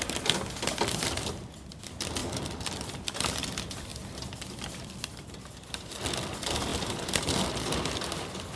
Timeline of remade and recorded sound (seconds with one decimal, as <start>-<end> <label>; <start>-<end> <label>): 0.0-2.2 recorded; 2.2-2.9 remade; 2.9-3.9 recorded; 3.9-5.9 remade; 5.9-6.7 recorded; 6.7-8.6 remade